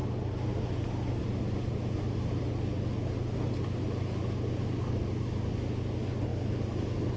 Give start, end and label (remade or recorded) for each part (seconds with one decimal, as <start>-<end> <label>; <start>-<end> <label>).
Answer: 0.0-7.2 recorded